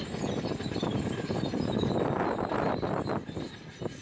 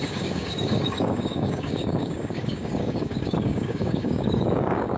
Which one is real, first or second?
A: first